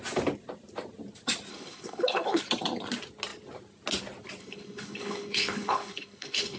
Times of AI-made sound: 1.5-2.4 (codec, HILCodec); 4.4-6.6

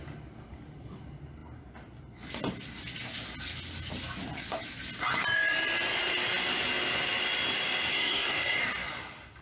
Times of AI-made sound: 7.9-8.6 (codec, SNAC)